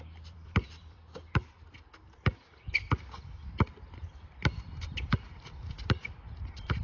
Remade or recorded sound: remade